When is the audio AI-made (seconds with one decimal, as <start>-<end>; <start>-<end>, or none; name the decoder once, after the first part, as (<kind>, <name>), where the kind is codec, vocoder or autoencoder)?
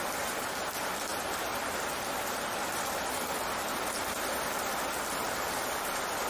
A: none